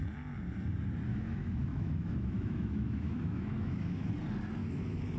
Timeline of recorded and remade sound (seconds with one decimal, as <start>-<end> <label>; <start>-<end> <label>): 0.0-1.1 recorded; 1.1-4.1 remade; 4.1-4.6 recorded; 4.6-5.2 remade

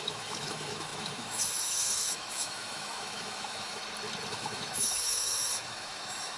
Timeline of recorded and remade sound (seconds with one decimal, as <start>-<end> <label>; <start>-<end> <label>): 0.0-3.8 remade; 3.8-4.3 recorded; 4.3-6.4 remade

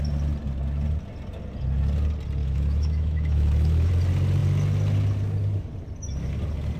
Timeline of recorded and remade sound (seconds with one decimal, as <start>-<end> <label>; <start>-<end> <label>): 0.0-2.4 recorded; 2.4-3.9 remade; 3.9-6.8 recorded

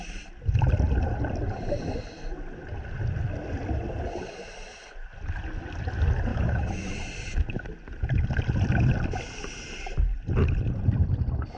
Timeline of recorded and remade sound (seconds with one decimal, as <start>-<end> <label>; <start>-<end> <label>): 0.0-6.3 recorded; 6.3-6.9 remade; 6.9-11.6 recorded

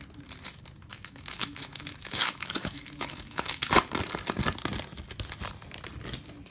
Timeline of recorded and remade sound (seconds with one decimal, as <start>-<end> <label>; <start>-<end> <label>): 0.0-0.9 recorded; 0.9-3.7 remade; 3.7-6.5 recorded